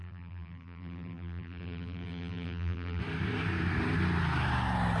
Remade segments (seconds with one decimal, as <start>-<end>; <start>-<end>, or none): 0.0-3.0